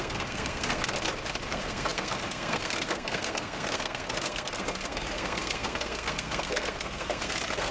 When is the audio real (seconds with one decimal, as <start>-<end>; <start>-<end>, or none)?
0.8-1.5